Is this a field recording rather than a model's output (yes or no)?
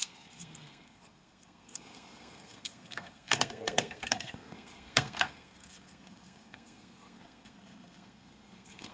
no